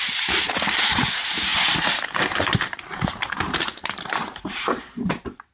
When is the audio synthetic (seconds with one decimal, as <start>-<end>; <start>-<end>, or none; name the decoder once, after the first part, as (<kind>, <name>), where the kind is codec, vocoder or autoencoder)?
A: 0.0-5.5 (vocoder, BigVGAN v2)